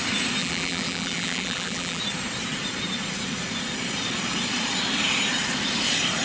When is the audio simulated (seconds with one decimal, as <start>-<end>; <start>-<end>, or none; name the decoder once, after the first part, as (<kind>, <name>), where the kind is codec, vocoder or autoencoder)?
0.4-2.0 (vocoder, BigVGAN v2)